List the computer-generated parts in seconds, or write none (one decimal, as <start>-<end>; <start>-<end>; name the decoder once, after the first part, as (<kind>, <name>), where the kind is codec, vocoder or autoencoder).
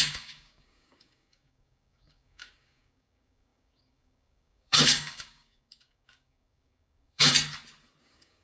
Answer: 0.0-7.3 (codec, DAC); 8.0-8.4